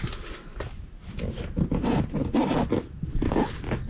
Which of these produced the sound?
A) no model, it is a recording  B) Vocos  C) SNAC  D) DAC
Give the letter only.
A